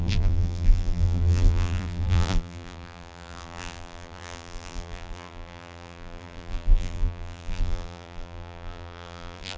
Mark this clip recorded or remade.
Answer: remade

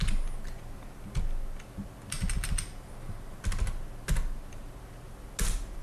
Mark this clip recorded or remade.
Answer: recorded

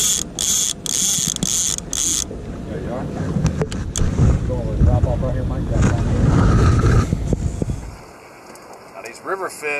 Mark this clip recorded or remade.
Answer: recorded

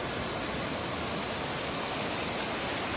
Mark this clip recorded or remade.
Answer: recorded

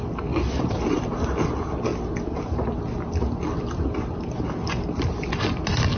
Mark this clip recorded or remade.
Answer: recorded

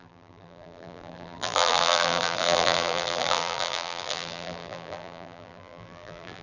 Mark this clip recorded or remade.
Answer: remade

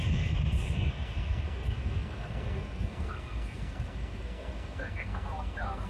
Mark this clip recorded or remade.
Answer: remade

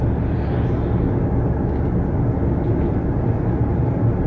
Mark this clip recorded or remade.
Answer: recorded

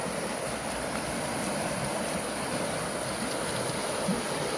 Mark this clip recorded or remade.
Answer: recorded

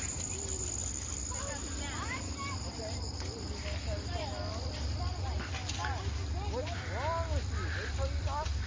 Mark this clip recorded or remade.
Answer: recorded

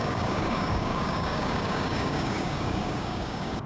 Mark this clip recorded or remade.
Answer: remade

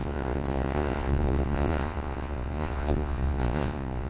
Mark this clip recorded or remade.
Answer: remade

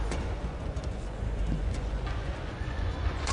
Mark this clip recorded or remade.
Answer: remade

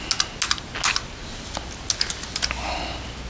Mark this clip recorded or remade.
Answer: recorded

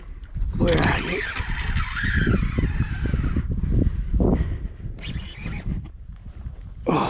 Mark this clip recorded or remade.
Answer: recorded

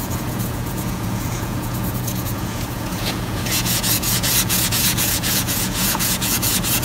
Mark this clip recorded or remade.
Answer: remade